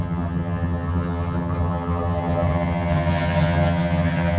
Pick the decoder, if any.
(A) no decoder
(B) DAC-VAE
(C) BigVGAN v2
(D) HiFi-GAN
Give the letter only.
D